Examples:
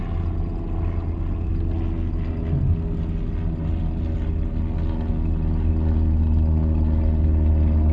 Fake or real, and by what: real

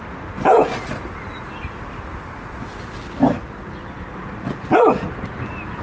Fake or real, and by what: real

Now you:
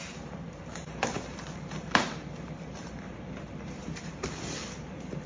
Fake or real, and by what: fake, vocoder, BigVGAN v2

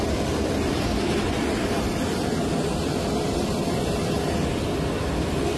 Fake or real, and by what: real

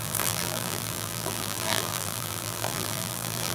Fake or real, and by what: fake, vocoder, BigVGAN v2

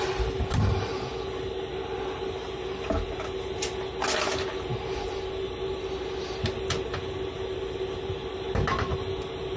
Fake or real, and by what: real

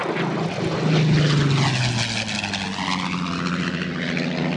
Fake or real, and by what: real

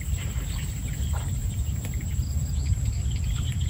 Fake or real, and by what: fake, vocoder, BigVGAN v2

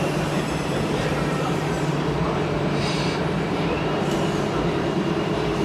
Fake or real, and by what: fake, vocoder, BigVGAN v2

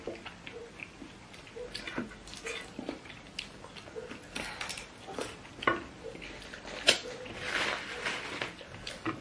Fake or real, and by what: real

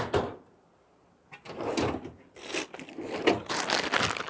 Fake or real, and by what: real